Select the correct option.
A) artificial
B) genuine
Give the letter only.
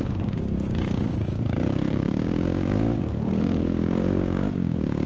A